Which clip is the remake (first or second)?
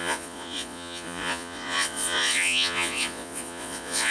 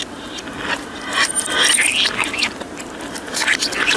first